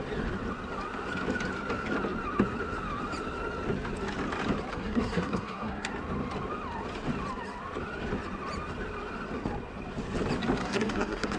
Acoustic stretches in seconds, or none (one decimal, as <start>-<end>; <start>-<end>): 0.0-4.7; 5.9-10.6